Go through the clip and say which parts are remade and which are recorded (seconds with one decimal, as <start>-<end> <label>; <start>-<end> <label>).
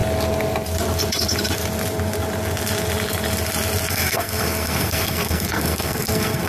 0.0-3.9 recorded; 3.9-6.5 remade